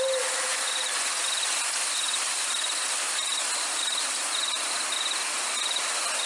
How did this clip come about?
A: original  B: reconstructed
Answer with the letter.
A